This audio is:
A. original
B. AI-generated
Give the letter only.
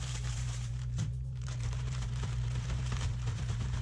B